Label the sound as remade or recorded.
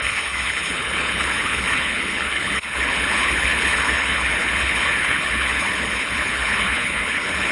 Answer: remade